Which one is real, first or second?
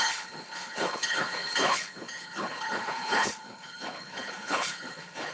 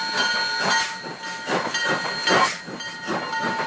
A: second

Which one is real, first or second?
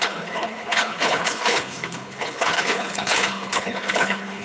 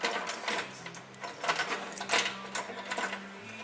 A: second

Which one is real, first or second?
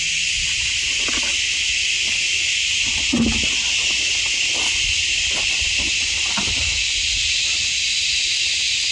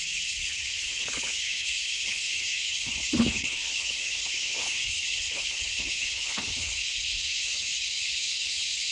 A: first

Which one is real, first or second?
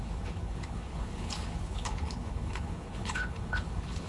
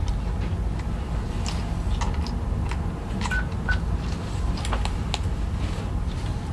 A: second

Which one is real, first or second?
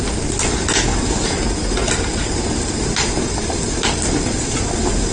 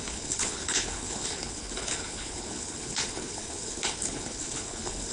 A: first